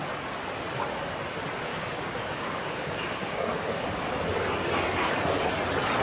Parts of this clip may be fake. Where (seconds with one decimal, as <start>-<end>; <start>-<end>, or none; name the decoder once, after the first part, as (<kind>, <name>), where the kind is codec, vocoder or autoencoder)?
1.7-4.1 (codec, DAC)